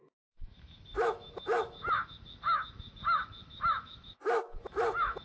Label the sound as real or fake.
fake